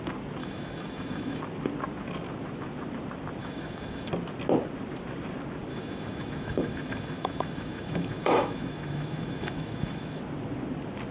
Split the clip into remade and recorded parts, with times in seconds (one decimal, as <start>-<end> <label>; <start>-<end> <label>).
0.0-0.4 recorded; 0.4-1.4 remade; 1.4-3.4 recorded; 3.4-4.1 remade; 4.1-5.7 recorded; 5.7-10.2 remade; 10.2-11.1 recorded

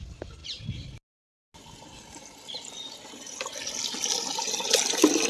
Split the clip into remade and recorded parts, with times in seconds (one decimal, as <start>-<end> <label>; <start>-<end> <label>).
0.0-5.3 recorded

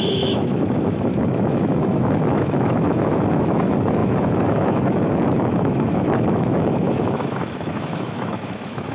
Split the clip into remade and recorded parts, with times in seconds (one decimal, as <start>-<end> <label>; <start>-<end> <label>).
0.0-8.9 remade

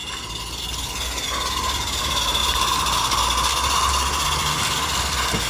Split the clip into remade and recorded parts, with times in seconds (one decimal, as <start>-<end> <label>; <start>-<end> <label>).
0.0-5.5 recorded

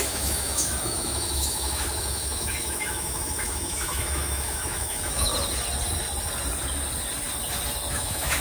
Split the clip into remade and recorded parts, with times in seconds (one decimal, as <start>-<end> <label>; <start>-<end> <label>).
0.0-5.3 remade; 5.3-7.9 recorded; 7.9-8.4 remade

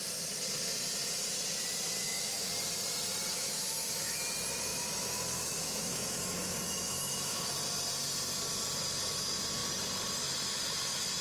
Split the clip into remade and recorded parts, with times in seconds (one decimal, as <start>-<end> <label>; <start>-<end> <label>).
0.0-2.0 recorded; 2.0-2.5 remade; 2.5-3.3 recorded; 3.3-4.2 remade; 4.2-4.7 recorded; 4.7-7.5 remade; 7.5-11.2 recorded

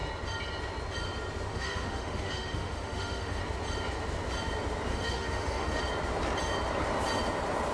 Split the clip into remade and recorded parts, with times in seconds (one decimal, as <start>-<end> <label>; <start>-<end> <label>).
0.0-1.5 recorded; 1.5-3.4 remade; 3.4-4.9 recorded; 4.9-5.8 remade; 5.8-7.7 recorded